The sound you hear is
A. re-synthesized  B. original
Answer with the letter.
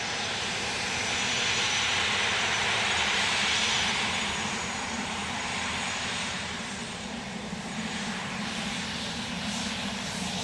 A